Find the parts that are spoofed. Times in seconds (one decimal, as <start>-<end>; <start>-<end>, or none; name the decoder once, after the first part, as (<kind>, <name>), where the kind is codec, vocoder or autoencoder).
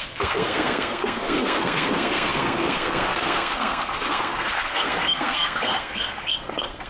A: 0.0-6.9 (codec, SNAC)